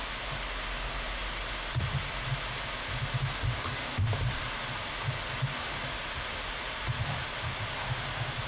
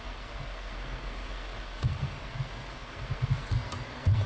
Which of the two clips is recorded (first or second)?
first